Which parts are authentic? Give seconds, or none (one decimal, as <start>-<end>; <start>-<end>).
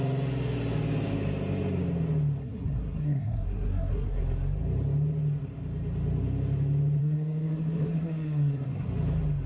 0.0-2.4; 4.2-7.0; 8.9-9.5